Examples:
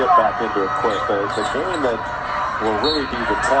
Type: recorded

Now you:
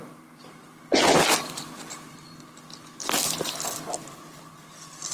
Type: recorded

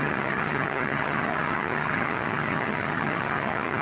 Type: remade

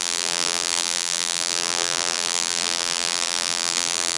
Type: remade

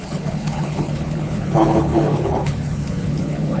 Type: remade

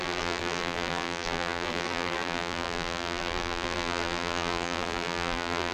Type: remade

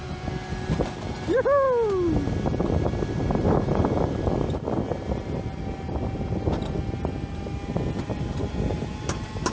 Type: recorded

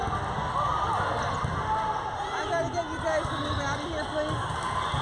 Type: recorded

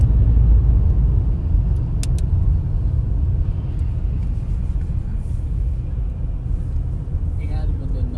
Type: recorded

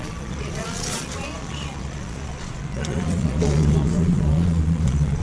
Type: remade